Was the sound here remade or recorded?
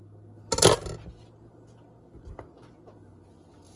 recorded